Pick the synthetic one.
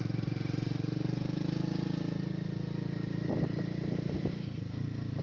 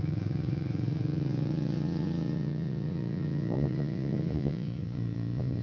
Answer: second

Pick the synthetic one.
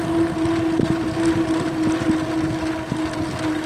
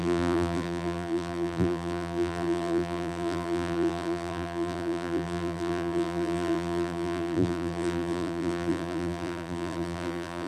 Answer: second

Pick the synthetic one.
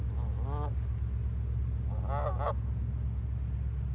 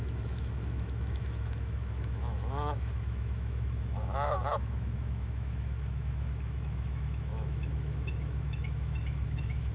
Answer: second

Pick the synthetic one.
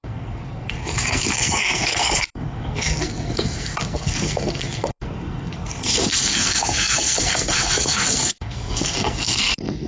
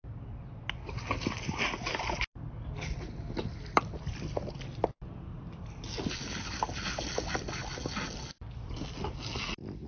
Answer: first